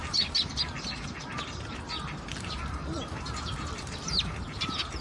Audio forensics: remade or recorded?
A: remade